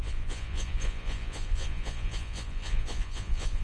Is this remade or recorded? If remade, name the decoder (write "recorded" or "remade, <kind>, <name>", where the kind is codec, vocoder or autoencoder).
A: remade, vocoder, Vocos